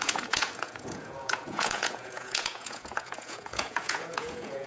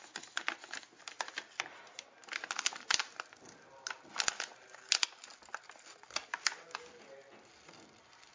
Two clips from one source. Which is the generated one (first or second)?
first